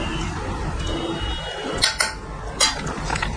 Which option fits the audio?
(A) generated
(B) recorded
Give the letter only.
B